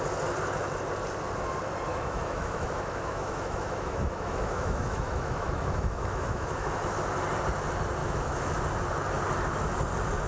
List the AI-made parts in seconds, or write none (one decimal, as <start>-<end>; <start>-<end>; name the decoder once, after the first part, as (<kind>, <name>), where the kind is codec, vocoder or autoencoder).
1.9-6.9 (autoencoder, DAC-VAE); 8.0-8.6